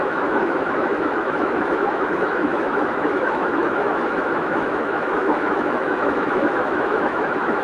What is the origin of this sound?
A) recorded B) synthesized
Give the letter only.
B